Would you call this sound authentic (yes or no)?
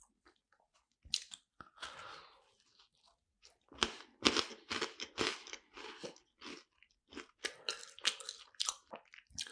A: yes